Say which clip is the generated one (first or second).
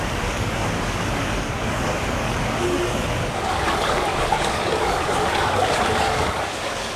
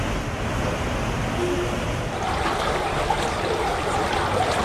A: first